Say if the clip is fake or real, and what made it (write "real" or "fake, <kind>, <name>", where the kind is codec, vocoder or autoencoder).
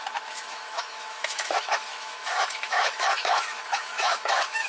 fake, autoencoder, DAC-VAE